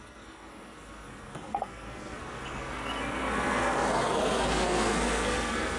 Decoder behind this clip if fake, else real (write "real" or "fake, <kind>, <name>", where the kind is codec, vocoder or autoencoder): fake, codec, SNAC